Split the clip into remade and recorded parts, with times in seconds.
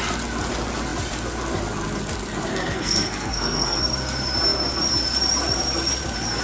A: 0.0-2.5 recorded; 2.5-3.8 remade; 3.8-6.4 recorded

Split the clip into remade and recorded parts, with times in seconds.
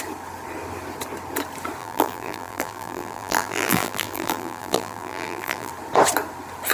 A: 0.0-1.8 recorded; 1.8-5.7 remade; 5.7-6.7 recorded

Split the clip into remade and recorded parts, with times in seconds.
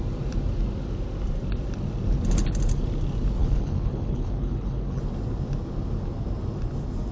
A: 0.0-3.4 recorded; 3.4-5.0 remade; 5.0-7.1 recorded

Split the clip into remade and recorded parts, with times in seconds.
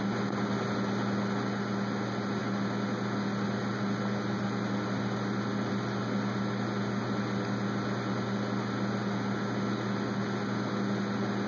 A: 0.0-11.5 recorded